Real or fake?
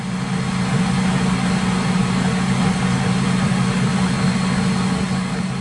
real